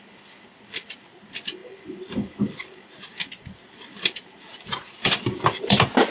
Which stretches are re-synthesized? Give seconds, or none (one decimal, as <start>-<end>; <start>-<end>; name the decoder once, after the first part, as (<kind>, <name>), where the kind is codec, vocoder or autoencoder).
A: none